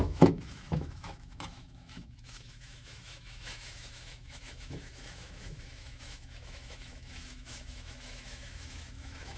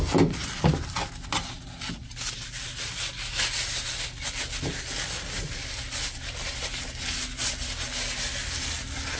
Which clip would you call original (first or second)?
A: second